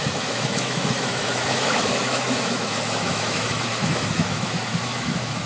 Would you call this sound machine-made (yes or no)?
yes